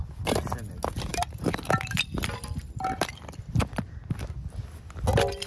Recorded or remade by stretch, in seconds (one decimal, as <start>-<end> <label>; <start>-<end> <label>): 0.0-1.1 recorded; 1.1-4.4 remade; 4.4-5.5 recorded